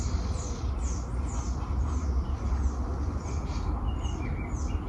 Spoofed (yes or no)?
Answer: no